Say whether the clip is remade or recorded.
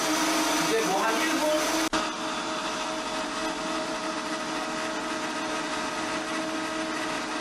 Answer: recorded